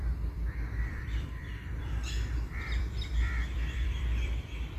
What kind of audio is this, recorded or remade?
remade